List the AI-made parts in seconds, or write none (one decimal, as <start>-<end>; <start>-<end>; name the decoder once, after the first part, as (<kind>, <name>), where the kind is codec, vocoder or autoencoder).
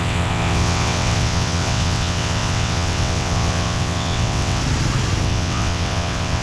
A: 0.0-4.6 (vocoder, WaveNeXt); 5.2-6.4